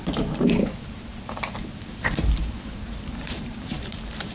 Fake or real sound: fake